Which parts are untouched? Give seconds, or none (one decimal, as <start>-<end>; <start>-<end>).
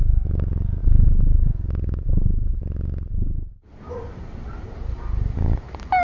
0.0-6.0